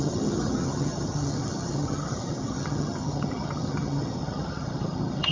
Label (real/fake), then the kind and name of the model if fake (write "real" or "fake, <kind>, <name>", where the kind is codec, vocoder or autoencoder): fake, vocoder, HiFi-GAN